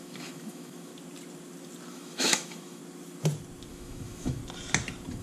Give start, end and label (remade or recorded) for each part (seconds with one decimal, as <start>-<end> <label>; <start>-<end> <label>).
0.0-0.9 remade; 0.9-1.9 recorded; 1.9-2.8 remade; 2.8-3.7 recorded; 3.7-4.4 remade; 4.4-5.2 recorded